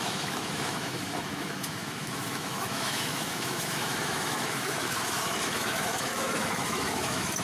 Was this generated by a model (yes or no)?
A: yes